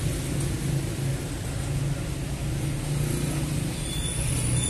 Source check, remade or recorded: recorded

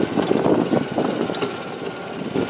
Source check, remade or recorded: recorded